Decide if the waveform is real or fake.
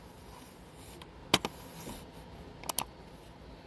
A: real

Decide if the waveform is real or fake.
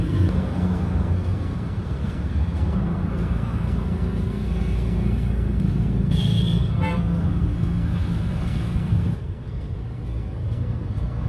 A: fake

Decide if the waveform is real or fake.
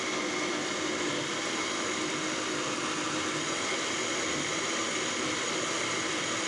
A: real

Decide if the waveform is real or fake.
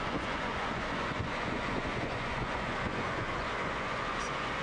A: fake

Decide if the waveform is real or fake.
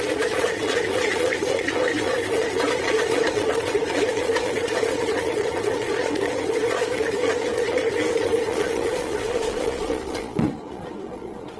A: fake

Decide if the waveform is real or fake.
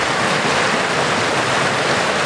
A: real